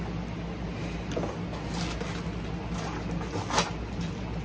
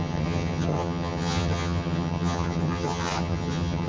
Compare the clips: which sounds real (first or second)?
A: first